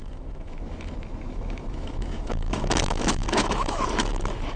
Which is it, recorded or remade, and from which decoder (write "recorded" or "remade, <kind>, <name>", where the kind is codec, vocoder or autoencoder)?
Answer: remade, autoencoder, DAC-VAE